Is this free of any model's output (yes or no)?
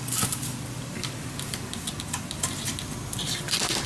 yes